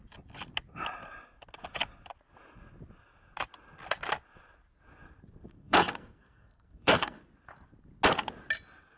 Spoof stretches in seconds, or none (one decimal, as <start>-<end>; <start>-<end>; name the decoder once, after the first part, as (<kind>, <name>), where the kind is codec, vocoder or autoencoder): 5.5-7.2 (codec, SNAC)